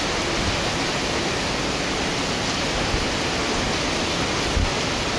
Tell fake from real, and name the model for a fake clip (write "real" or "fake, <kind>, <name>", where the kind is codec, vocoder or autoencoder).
real